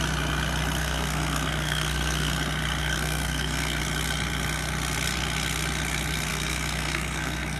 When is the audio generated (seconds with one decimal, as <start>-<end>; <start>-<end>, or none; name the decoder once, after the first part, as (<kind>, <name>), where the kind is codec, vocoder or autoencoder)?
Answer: 0.8-2.3 (codec, SNAC); 2.8-3.8; 6.3-7.6